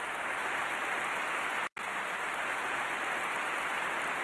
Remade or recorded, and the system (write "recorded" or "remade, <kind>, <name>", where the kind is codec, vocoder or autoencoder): recorded